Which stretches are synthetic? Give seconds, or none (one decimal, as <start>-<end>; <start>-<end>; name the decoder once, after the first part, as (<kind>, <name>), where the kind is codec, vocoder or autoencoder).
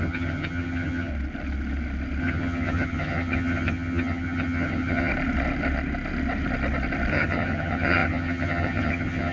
0.0-1.1 (vocoder, HiFi-GAN); 2.2-5.1; 7.1-9.3